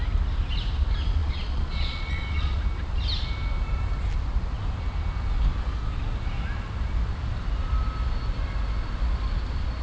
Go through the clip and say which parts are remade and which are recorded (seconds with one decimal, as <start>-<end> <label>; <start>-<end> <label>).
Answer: 0.0-1.2 recorded; 1.2-2.6 remade; 2.6-9.8 recorded